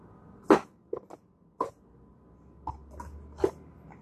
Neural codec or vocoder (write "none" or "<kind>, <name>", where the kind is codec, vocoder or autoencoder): none